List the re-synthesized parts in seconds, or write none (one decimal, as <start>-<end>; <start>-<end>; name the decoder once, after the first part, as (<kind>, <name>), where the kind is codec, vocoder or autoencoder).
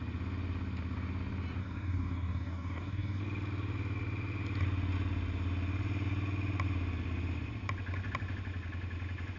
1.6-3.2 (codec, DAC)